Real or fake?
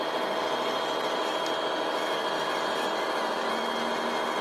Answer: real